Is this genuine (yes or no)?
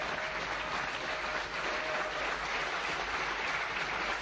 yes